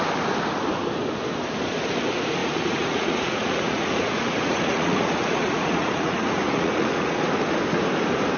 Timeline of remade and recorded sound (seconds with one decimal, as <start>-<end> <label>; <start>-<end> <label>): 0.0-2.4 recorded; 2.4-7.2 remade; 7.2-8.4 recorded